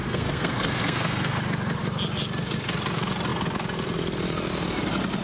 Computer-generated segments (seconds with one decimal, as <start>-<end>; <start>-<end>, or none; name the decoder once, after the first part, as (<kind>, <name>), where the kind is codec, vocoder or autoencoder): 0.0-1.4 (codec, SNAC)